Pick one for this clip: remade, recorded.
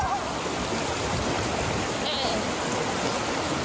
recorded